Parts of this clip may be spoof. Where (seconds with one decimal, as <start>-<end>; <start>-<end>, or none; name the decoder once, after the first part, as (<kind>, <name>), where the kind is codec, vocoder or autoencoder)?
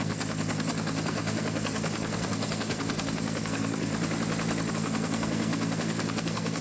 0.0-3.9 (codec, SNAC); 4.7-6.6